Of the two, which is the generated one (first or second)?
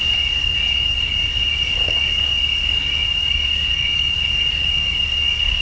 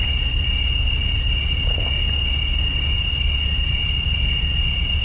first